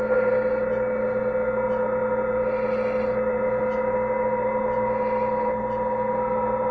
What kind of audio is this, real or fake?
real